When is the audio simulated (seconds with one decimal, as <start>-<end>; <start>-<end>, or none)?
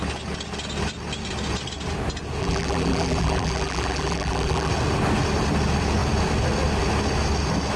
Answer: 2.4-4.7